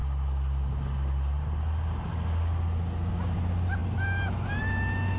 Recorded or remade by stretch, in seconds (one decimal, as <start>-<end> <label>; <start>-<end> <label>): 0.0-5.2 recorded